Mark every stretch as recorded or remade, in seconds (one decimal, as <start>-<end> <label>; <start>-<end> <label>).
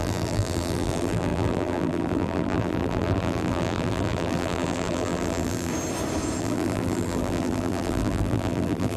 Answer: 0.0-5.7 remade; 5.7-6.4 recorded; 6.4-9.0 remade